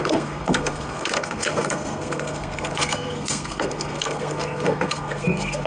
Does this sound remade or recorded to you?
remade